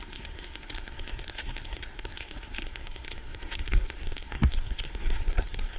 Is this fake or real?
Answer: fake